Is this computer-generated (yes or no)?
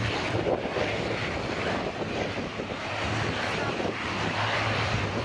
yes